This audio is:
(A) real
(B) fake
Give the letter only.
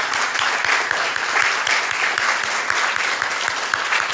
A